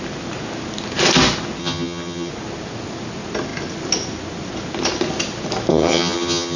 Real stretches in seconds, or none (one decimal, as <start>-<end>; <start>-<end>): 0.0-1.6; 2.3-5.7